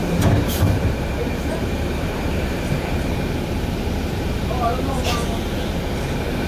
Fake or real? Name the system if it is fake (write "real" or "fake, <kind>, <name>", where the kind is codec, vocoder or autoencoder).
fake, vocoder, BigVGAN v2